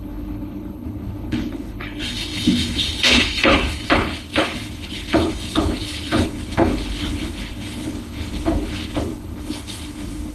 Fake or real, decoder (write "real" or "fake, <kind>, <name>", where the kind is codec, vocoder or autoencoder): fake, codec, HILCodec